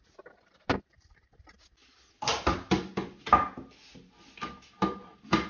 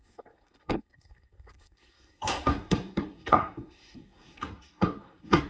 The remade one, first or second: second